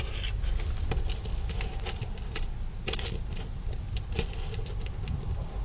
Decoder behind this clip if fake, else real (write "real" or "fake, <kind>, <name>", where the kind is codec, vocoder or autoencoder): real